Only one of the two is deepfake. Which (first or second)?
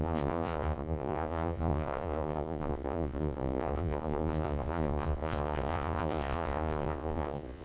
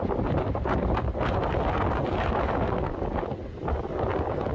first